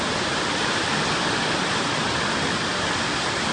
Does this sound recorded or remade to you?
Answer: recorded